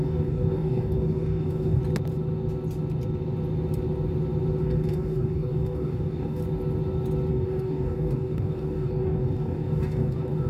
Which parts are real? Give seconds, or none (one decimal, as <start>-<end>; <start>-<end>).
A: 1.8-4.6; 6.4-7.3